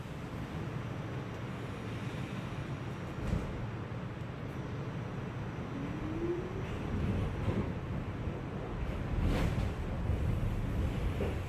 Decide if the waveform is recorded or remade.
recorded